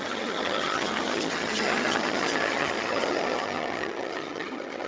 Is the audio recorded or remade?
remade